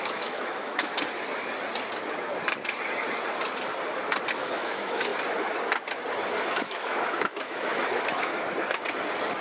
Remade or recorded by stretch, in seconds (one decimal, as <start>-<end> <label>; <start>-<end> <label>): 0.0-0.9 remade; 0.9-4.3 recorded; 4.3-5.1 remade; 5.1-6.5 recorded; 6.5-8.3 remade; 8.3-9.4 recorded